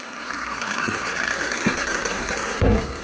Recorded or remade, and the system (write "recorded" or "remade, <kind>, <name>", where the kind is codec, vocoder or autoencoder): remade, codec, SNAC